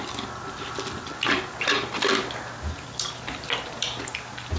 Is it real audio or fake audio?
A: real